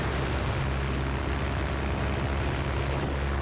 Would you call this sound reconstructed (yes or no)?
no